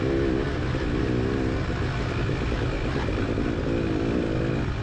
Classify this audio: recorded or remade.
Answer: recorded